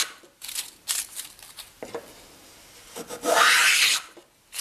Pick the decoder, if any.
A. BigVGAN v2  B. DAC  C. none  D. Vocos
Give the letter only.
A